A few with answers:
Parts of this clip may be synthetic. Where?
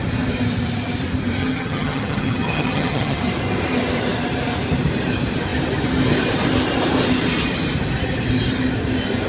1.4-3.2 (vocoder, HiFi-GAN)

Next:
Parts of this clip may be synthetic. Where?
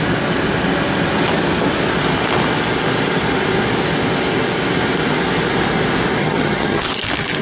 6.2-6.8 (vocoder, HiFi-GAN)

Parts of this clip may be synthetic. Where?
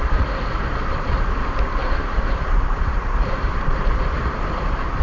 1.8-5.0 (vocoder, BigVGAN v2)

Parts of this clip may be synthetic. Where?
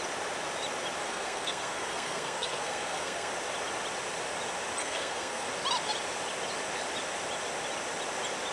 1.0-3.3 (codec, SNAC); 4.8-5.5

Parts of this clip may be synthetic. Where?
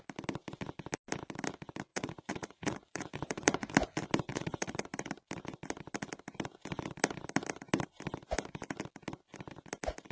1.9-3.7 (vocoder, Vocos); 4.3-4.8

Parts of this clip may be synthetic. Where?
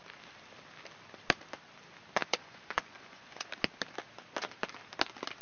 2.2-3.5 (vocoder, Vocos)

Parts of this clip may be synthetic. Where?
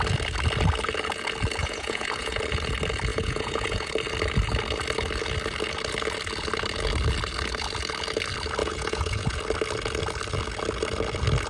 1.6-2.4 (vocoder, Vocos); 3.1-3.9; 8.6-9.4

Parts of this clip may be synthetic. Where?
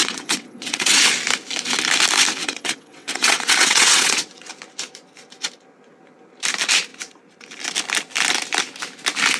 0.0-1.1 (vocoder, WaveNeXt); 2.4-4.5